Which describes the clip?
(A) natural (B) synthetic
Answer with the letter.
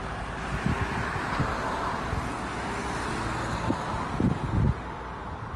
A